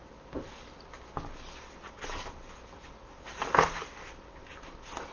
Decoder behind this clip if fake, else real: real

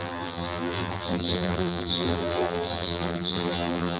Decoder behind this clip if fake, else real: fake, vocoder, BigVGAN v2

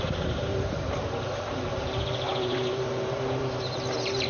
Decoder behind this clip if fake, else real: fake, vocoder, BigVGAN v2